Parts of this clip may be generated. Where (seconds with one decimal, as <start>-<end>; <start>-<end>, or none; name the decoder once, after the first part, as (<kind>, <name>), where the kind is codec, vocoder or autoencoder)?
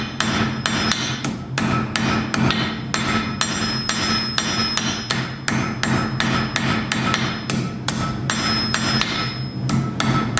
none